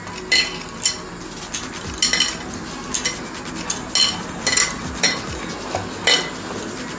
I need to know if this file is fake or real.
real